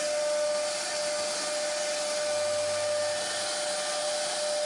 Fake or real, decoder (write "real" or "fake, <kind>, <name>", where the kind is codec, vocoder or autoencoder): real